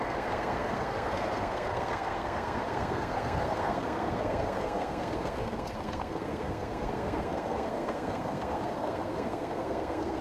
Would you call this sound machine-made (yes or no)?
yes